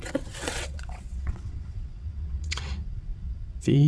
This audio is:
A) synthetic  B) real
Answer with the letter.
A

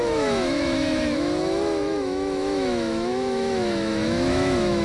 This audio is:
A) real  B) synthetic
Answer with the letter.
B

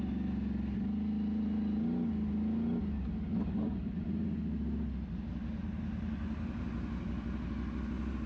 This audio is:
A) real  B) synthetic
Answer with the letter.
A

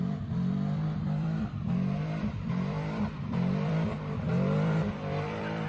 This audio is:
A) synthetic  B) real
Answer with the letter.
A